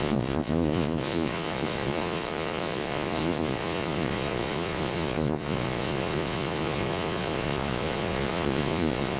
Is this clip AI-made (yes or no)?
yes